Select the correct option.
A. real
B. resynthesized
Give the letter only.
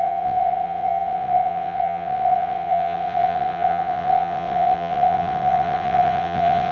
B